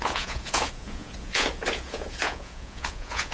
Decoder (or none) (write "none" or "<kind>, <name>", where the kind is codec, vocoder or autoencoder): vocoder, Vocos